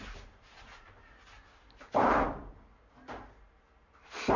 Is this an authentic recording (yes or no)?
yes